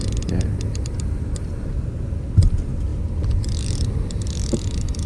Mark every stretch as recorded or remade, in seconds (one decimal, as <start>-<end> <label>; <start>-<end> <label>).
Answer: 0.0-5.1 recorded